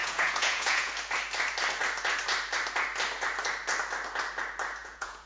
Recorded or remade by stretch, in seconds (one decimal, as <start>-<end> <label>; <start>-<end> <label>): 0.0-0.9 remade; 0.9-4.8 recorded; 4.8-5.3 remade